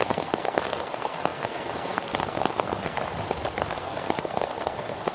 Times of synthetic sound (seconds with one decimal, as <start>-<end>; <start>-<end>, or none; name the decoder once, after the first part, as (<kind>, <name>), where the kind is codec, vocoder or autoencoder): 0.0-3.0 (codec, SNAC); 3.8-5.1